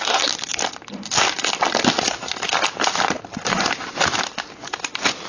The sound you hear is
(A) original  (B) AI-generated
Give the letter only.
A